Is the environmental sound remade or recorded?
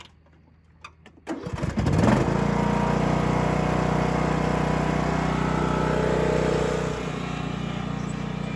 recorded